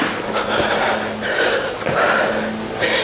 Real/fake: real